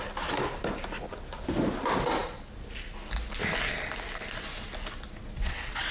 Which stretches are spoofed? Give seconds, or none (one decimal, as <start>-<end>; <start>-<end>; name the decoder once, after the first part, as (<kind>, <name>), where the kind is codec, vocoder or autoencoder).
5.2-5.9 (vocoder, WaveNeXt)